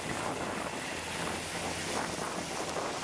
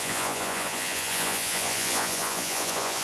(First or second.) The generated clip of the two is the second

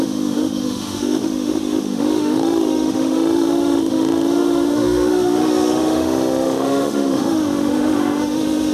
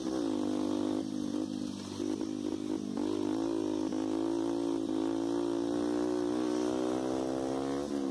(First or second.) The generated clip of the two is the first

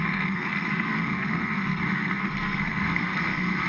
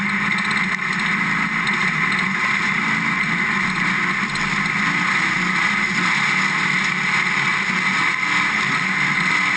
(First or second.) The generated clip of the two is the first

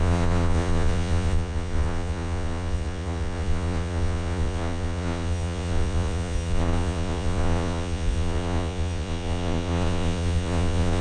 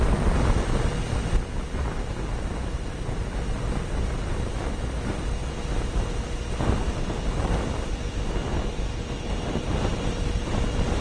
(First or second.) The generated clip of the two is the first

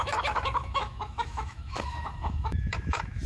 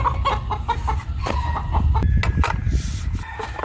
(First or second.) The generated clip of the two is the first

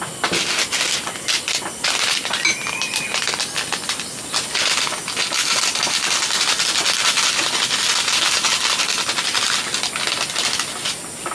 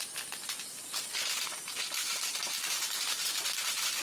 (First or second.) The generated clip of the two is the second